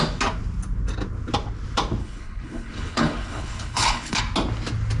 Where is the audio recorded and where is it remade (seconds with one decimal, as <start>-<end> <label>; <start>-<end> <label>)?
0.0-2.0 recorded; 2.0-4.2 remade; 4.2-5.0 recorded